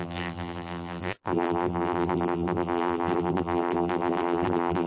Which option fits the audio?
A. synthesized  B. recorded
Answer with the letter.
A